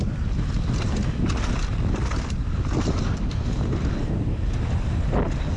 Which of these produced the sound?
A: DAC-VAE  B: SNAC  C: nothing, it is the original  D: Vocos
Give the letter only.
C